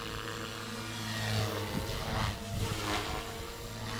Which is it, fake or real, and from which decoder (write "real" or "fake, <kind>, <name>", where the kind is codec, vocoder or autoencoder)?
real